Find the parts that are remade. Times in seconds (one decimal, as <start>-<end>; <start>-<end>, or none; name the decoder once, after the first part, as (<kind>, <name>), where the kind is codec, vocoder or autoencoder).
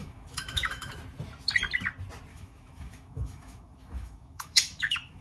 0.0-0.9 (autoencoder, DAC-VAE); 2.3-5.2